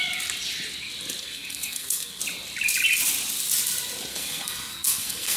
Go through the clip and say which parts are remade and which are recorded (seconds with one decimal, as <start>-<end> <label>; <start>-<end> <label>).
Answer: 0.0-1.2 recorded; 1.2-2.2 remade; 2.2-4.1 recorded; 4.1-5.4 remade